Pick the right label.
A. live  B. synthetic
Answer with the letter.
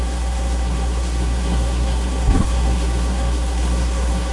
B